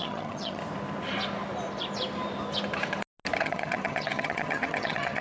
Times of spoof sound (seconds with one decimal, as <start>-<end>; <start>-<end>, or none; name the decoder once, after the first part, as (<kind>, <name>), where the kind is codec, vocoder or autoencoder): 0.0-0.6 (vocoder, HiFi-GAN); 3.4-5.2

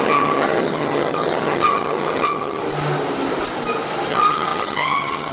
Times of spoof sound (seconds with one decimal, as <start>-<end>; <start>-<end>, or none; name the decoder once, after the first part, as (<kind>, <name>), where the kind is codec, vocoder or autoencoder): 0.0-2.6 (vocoder, HiFi-GAN); 4.1-5.3

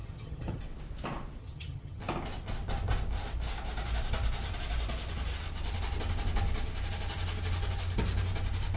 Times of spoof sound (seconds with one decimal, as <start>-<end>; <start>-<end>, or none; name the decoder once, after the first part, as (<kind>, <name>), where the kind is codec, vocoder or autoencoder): 0.0-0.6 (vocoder, HiFi-GAN); 1.4-2.0

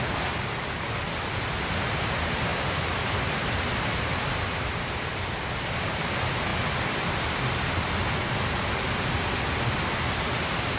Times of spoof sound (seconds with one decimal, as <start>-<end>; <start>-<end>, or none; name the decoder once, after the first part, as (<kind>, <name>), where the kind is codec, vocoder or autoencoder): none